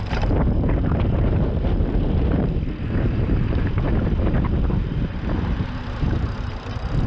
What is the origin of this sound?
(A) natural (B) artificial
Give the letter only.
B